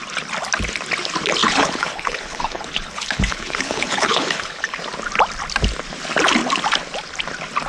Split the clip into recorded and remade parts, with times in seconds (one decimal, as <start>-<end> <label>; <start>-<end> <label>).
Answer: 0.0-1.4 recorded; 1.4-4.8 remade; 4.8-7.7 recorded